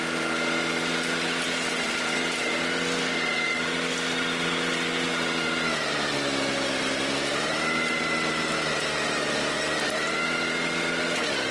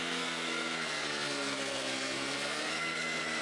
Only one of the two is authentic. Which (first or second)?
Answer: first